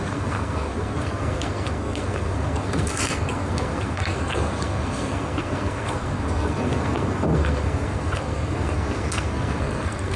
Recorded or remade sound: remade